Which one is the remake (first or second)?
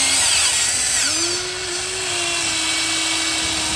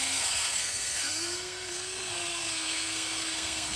second